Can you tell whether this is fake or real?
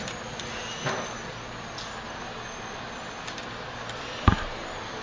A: fake